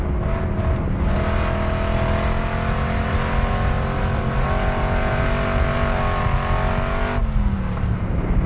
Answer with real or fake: real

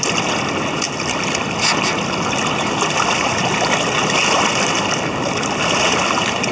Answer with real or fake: real